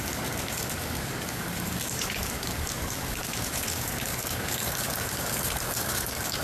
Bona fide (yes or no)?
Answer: no